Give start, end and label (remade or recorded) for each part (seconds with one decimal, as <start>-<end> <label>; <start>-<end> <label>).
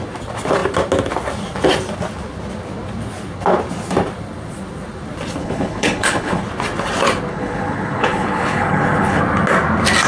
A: 0.0-5.4 recorded; 5.4-6.4 remade; 6.4-7.3 recorded; 7.3-9.2 remade; 9.2-10.1 recorded